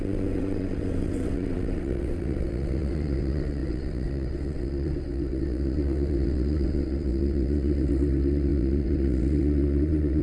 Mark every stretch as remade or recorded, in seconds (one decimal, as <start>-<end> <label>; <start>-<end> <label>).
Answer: 0.0-10.2 remade